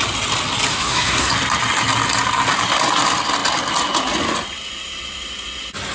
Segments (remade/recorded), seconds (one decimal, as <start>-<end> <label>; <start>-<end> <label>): 0.0-0.7 recorded; 0.7-1.3 remade; 1.3-5.9 recorded